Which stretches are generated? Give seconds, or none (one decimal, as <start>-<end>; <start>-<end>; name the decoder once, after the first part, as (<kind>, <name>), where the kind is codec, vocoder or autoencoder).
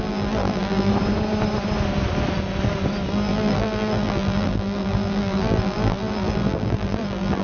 0.0-0.9 (vocoder, BigVGAN v2); 3.1-7.4